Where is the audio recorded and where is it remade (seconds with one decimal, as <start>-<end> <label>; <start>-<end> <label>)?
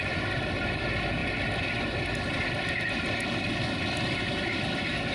0.0-5.1 recorded